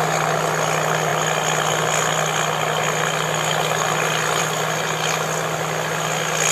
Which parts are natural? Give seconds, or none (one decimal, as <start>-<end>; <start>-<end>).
0.0-6.5